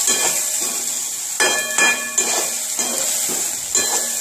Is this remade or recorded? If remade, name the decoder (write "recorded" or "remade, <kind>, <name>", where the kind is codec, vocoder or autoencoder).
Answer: recorded